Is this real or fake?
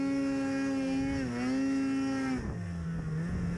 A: real